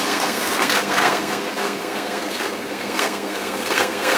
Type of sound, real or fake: fake